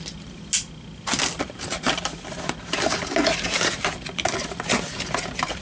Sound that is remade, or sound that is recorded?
recorded